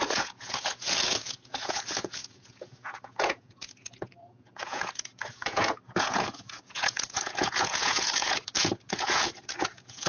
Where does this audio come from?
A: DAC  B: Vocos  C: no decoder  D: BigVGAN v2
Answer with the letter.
B